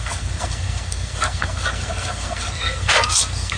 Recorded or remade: remade